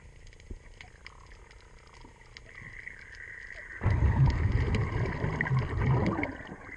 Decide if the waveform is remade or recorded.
recorded